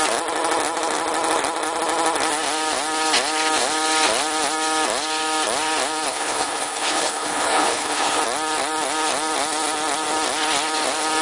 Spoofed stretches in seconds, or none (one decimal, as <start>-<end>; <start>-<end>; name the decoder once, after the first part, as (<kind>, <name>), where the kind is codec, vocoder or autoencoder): 6.1-8.2 (codec, HILCodec)